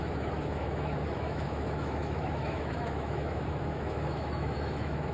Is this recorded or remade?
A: remade